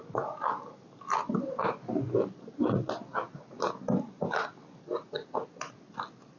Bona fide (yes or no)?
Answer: yes